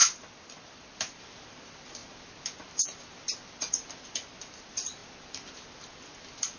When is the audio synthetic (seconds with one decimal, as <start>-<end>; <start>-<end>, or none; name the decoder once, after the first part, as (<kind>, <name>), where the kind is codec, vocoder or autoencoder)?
none